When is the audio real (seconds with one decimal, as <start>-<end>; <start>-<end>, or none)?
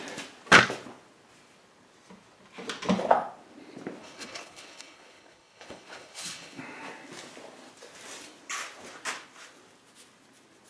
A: 0.0-4.0; 6.6-10.7